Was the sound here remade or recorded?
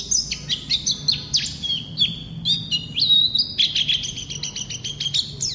recorded